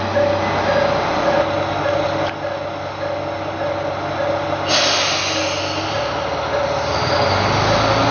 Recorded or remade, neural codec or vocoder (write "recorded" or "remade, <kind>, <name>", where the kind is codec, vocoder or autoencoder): recorded